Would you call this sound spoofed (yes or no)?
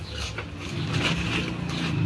no